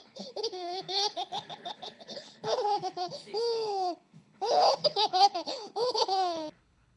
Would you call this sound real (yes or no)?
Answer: no